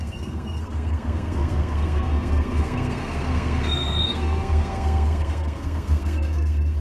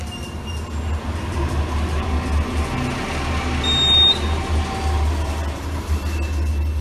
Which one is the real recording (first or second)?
second